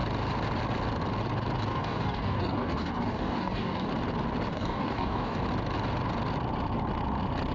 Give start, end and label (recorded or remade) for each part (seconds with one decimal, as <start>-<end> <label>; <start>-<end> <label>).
0.0-1.7 recorded; 1.7-3.9 remade; 3.9-4.5 recorded; 4.5-5.4 remade; 5.4-7.5 recorded